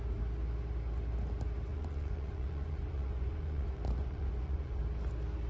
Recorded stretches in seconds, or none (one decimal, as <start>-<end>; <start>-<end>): 0.0-1.7; 4.8-5.5